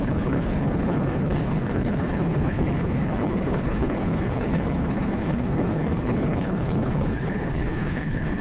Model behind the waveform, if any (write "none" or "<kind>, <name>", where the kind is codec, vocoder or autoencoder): codec, HILCodec